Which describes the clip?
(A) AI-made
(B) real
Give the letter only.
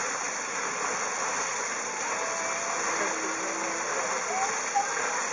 B